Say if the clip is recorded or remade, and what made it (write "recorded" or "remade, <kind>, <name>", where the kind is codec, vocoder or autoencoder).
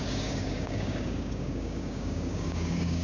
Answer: remade, codec, DAC